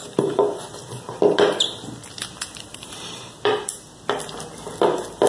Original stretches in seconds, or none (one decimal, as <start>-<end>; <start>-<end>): 0.6-2.7; 3.6-5.3